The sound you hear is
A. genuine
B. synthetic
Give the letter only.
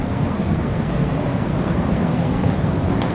B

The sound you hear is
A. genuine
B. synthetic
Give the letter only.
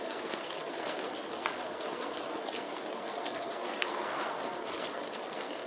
B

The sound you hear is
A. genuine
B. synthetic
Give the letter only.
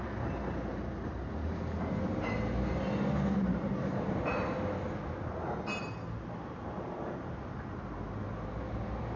A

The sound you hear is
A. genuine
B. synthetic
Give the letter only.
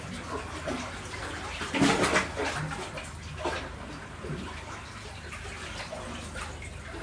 A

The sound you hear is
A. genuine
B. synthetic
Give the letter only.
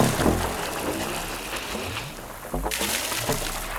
A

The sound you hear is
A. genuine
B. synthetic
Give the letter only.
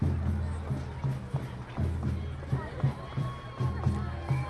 A